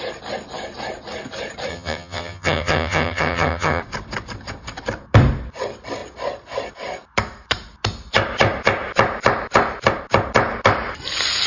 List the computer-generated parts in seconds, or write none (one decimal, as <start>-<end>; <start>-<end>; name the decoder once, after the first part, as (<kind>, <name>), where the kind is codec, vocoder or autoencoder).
1.7-3.8 (vocoder, HiFi-GAN)